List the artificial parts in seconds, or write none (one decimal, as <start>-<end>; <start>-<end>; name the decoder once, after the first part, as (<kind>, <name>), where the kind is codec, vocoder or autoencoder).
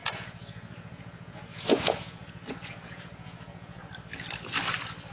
0.0-3.9 (vocoder, Vocos)